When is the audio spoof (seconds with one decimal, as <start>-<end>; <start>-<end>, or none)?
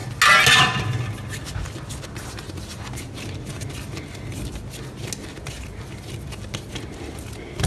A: none